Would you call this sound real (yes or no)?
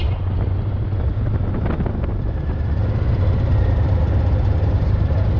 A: yes